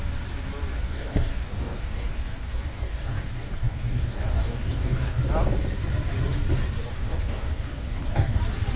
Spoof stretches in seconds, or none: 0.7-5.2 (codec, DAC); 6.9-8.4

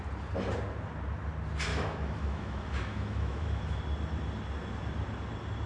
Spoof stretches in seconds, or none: 1.7-3.8 (autoencoder, DAC-VAE)